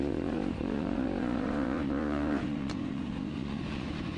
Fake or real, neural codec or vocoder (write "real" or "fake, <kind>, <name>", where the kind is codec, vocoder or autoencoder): fake, vocoder, Vocos